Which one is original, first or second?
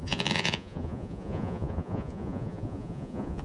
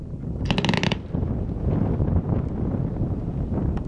second